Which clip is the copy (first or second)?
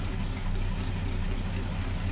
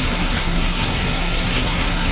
second